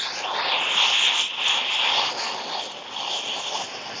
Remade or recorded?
recorded